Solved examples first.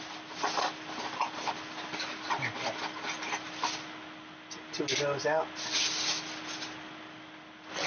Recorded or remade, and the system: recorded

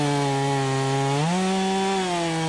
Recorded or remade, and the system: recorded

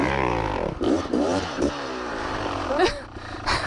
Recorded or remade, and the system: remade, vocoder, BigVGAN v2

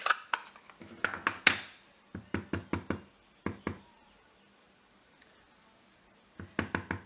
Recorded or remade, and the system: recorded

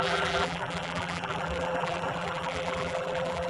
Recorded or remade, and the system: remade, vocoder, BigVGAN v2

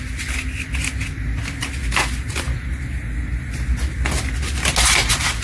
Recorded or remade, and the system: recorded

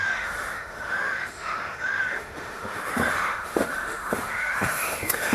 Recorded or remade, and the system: remade, autoencoder, DAC-VAE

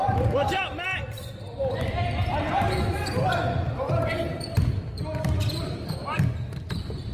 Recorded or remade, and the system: remade, vocoder, BigVGAN v2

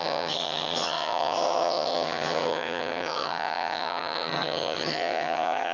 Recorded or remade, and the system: remade, vocoder, HiFi-GAN